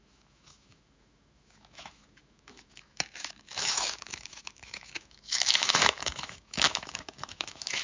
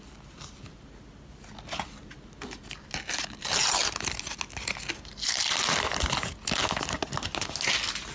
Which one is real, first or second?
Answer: second